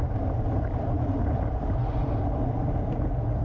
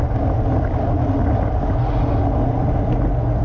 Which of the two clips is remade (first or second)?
first